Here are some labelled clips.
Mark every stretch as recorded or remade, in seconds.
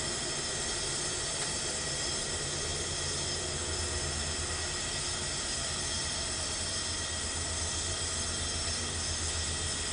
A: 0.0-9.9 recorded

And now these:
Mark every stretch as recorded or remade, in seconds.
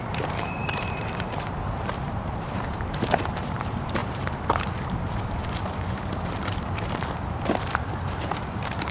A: 0.0-8.9 remade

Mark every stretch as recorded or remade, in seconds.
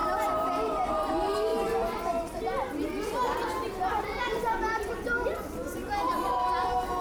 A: 0.0-1.5 remade; 1.5-3.9 recorded; 3.9-5.8 remade; 5.8-7.0 recorded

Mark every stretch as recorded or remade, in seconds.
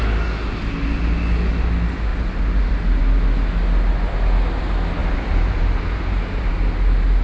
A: 0.0-2.1 recorded; 2.1-3.0 remade; 3.0-5.0 recorded; 5.0-6.5 remade; 6.5-7.2 recorded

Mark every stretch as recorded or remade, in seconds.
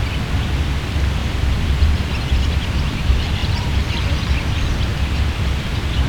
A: 0.0-1.2 recorded; 1.2-2.4 remade; 2.4-3.4 recorded; 3.4-4.0 remade; 4.0-6.1 recorded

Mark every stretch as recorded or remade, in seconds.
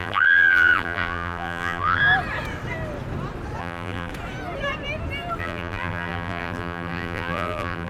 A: 0.0-2.0 remade; 2.0-3.6 recorded; 3.6-4.1 remade; 4.1-5.4 recorded; 5.4-7.9 remade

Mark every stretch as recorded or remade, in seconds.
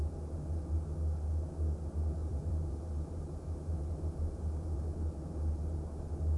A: 0.0-2.2 recorded; 2.2-4.9 remade; 4.9-6.4 recorded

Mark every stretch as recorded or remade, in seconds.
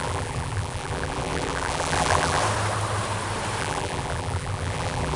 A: 0.0-2.4 remade; 2.4-3.6 recorded; 3.6-5.2 remade